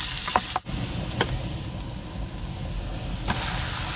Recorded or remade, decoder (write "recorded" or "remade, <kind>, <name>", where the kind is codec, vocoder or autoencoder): recorded